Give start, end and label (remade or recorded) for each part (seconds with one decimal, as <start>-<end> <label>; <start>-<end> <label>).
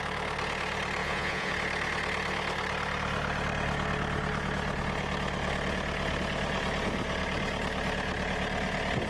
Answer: 0.0-1.0 recorded; 1.0-1.5 remade; 1.5-9.1 recorded